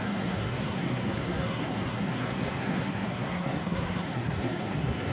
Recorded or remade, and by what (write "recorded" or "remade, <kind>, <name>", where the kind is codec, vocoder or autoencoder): remade, codec, SNAC